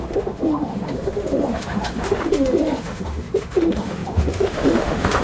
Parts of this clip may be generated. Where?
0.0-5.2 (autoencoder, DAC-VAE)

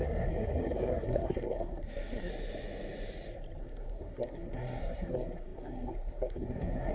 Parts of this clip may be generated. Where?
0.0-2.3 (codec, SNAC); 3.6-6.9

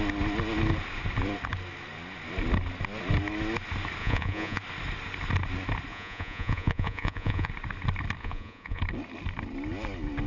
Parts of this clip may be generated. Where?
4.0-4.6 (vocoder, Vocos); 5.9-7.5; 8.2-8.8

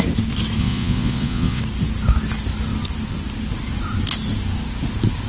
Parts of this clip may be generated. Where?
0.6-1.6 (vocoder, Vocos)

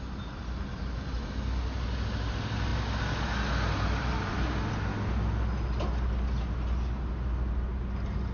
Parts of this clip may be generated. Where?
none